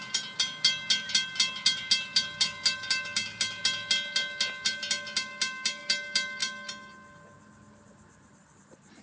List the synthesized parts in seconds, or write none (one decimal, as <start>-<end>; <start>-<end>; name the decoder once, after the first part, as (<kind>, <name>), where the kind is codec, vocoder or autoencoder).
none